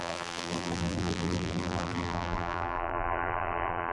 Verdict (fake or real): fake